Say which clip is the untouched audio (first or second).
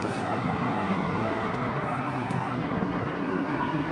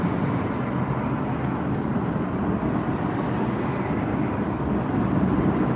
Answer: second